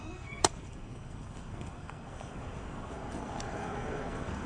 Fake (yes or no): yes